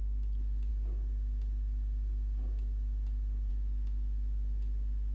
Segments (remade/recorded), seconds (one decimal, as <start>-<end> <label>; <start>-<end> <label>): 0.0-5.1 recorded